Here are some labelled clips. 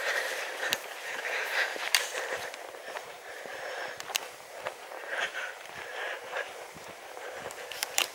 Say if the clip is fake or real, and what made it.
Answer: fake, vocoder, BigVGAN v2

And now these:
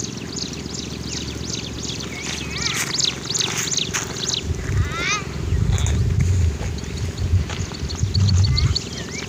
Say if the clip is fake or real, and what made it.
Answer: real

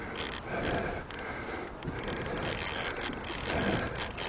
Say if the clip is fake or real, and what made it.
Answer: real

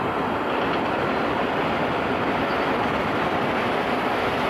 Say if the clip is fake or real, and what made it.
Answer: real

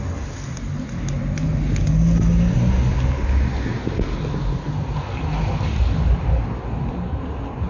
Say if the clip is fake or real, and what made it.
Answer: real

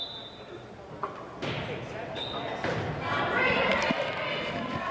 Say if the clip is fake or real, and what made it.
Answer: real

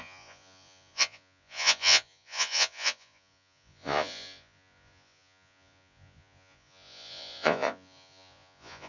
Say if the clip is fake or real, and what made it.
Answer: fake, vocoder, Vocos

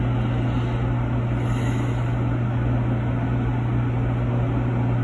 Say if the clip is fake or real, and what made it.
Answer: real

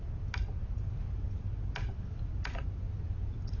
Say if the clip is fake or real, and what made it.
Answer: real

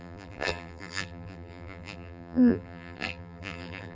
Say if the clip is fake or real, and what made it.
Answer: fake, vocoder, BigVGAN v2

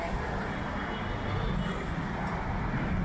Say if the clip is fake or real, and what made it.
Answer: real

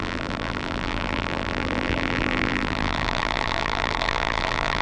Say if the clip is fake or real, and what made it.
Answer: fake, vocoder, BigVGAN v2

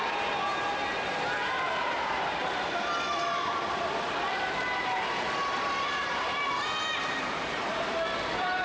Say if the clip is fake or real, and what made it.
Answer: fake, vocoder, BigVGAN v2